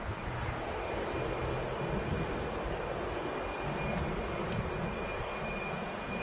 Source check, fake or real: real